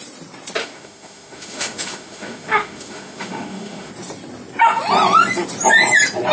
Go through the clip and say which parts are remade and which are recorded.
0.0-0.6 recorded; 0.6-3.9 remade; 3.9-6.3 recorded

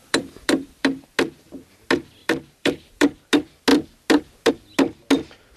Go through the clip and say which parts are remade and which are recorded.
0.0-1.0 remade; 1.0-2.2 recorded; 2.2-3.2 remade; 3.2-5.6 recorded

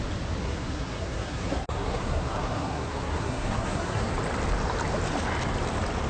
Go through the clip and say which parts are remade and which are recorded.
0.0-0.4 recorded; 0.4-4.1 remade; 4.1-6.1 recorded

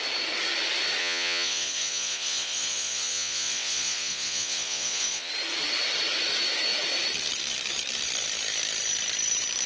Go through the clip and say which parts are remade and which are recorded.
0.0-1.0 recorded; 1.0-5.3 remade; 5.3-9.7 recorded

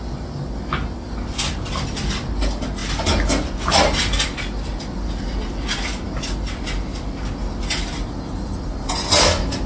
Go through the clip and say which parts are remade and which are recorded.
0.0-9.7 recorded

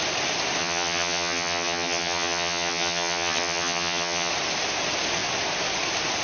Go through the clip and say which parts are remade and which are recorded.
0.0-0.6 recorded; 0.6-4.3 remade; 4.3-6.2 recorded